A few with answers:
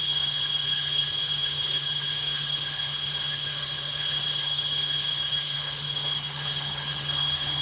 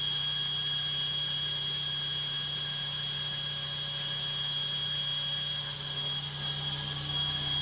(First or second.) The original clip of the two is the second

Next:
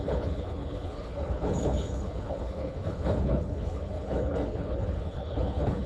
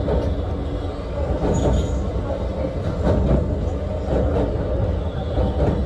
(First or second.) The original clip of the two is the second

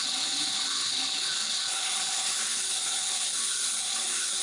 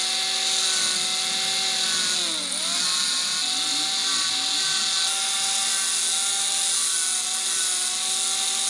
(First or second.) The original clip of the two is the second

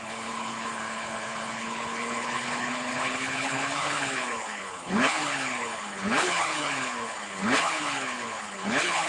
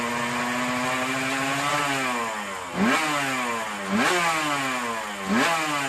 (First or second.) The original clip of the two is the second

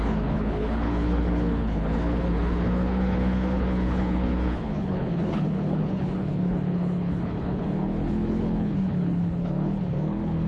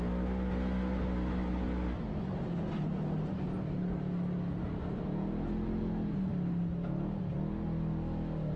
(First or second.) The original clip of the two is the second